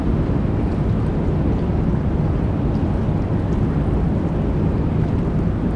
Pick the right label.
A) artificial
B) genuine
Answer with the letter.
B